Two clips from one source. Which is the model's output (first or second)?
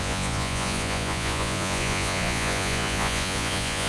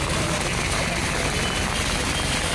first